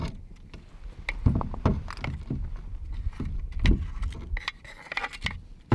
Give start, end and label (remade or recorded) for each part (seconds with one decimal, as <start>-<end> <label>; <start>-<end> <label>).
0.0-5.7 recorded